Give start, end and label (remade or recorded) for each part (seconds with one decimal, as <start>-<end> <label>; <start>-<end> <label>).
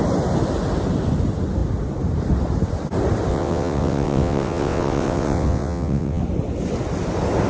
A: 0.0-3.3 recorded; 3.3-6.2 remade; 6.2-7.5 recorded